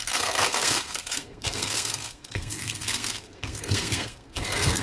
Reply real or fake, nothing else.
fake